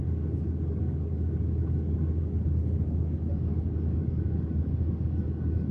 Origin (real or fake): fake